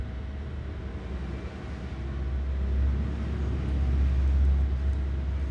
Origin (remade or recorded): recorded